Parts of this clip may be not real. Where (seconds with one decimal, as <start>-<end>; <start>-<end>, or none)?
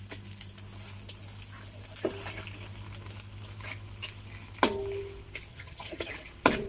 5.5-6.1